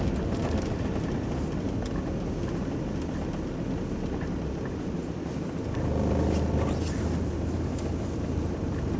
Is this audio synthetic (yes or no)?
no